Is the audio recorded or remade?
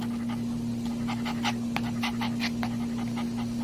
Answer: recorded